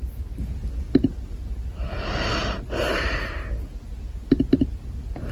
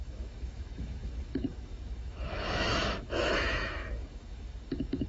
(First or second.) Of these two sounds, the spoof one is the second